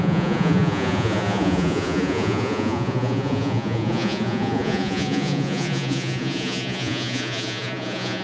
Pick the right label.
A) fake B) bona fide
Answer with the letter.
A